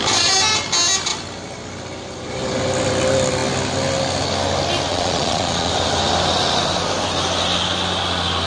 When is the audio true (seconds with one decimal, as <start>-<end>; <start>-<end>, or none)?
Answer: 0.0-4.9; 5.7-8.5